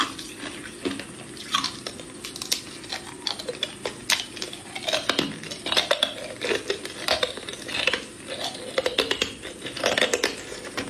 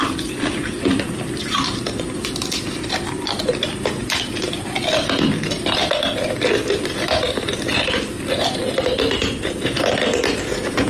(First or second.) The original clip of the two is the first